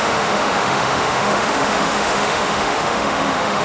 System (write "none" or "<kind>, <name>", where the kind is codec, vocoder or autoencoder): autoencoder, DAC-VAE